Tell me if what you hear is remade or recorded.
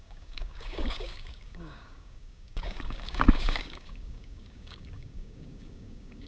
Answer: remade